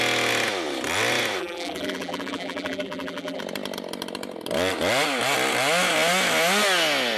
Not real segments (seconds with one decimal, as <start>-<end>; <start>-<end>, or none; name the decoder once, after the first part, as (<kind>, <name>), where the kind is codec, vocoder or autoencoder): 1.4-3.4 (vocoder, BigVGAN v2)